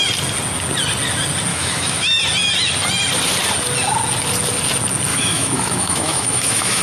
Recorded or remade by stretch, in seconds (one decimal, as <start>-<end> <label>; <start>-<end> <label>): 0.0-1.5 recorded; 1.5-2.2 remade; 2.2-5.1 recorded; 5.1-6.8 remade